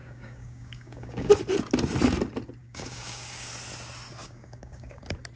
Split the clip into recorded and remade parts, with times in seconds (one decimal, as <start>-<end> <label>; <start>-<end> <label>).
0.0-1.3 remade; 1.3-2.6 recorded; 2.6-3.5 remade; 3.5-4.2 recorded; 4.2-5.0 remade; 5.0-5.4 recorded